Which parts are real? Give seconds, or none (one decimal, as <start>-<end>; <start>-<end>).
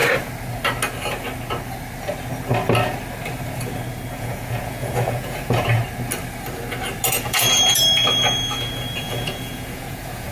0.0-4.2; 5.8-7.1